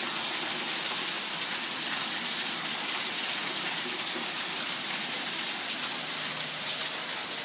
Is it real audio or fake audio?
real